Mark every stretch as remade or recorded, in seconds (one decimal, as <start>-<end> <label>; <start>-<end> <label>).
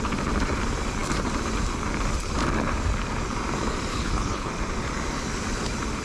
0.0-3.9 recorded; 3.9-4.5 remade; 4.5-6.0 recorded